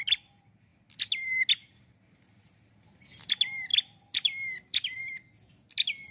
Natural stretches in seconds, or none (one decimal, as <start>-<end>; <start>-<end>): 0.0-3.7; 5.0-6.1

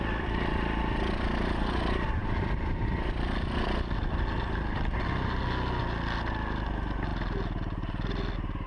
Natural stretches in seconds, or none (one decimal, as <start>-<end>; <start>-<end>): 0.0-8.7